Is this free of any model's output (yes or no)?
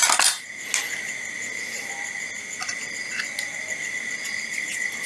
yes